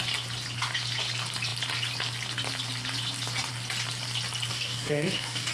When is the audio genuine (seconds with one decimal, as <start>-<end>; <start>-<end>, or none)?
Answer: 0.0-4.5